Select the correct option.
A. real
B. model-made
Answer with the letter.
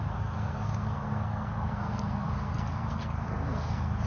B